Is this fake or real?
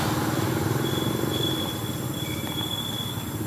real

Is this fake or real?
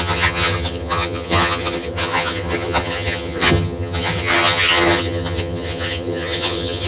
fake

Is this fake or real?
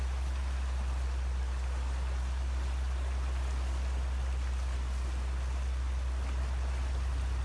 real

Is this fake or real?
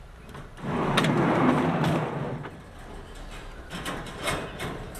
real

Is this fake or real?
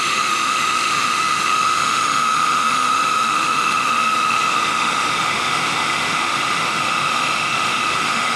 fake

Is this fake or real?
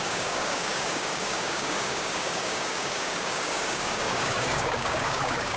fake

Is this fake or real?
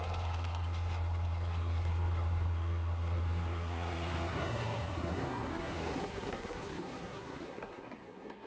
fake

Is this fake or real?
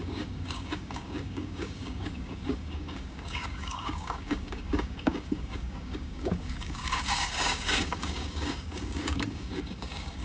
fake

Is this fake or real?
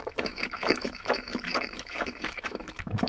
fake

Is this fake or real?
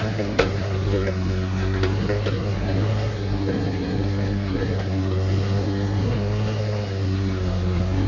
fake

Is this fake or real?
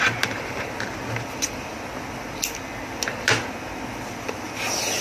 real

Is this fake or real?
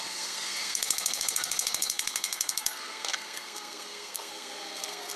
fake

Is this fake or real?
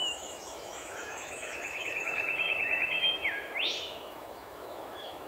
fake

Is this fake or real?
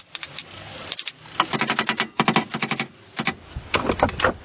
real